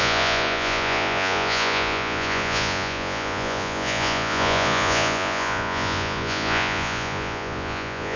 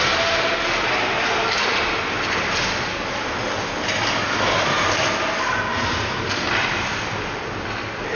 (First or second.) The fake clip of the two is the first